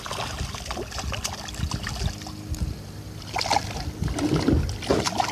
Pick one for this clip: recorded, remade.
recorded